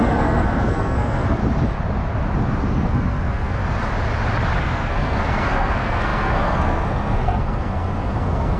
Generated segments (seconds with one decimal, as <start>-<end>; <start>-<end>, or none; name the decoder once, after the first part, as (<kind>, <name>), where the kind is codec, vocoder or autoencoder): 0.0-1.4 (codec, SNAC); 2.7-3.6; 4.6-8.6

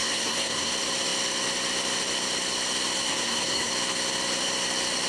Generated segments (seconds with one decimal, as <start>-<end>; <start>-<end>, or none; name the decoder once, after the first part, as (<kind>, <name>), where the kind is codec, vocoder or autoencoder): 0.0-0.7 (codec, SNAC); 3.1-3.7

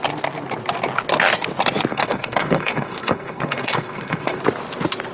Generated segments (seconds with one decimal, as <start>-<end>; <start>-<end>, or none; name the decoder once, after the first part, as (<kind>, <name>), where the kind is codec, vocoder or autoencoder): 1.9-4.4 (codec, SNAC)

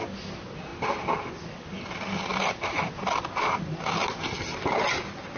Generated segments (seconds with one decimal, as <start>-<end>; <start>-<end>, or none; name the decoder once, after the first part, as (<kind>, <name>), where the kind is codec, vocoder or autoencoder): none